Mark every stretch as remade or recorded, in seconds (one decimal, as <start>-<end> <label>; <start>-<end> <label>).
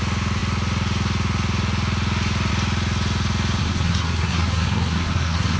0.0-3.6 recorded; 3.6-5.6 remade